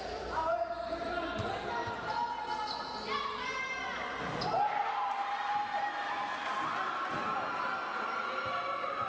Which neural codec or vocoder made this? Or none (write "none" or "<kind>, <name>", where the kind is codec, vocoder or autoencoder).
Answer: none